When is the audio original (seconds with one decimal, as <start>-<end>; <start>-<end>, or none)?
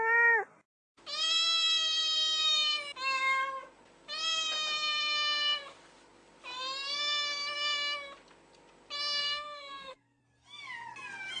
0.0-9.2; 10.2-11.4